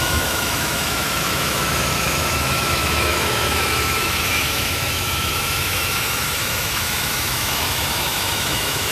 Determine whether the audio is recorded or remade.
remade